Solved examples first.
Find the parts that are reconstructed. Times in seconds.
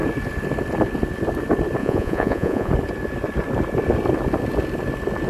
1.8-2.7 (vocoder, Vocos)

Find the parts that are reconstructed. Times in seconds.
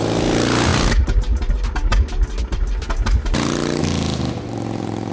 none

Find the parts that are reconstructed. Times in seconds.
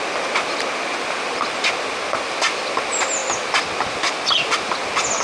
none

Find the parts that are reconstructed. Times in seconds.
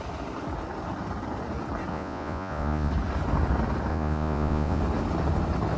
1.9-2.9 (vocoder, Vocos); 3.9-4.8